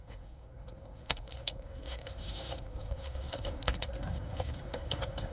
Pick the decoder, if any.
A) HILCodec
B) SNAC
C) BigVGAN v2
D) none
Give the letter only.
B